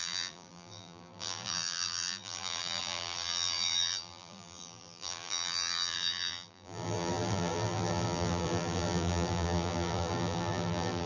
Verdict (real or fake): fake